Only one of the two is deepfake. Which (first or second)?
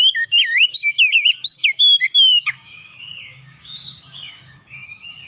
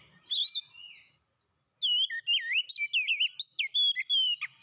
first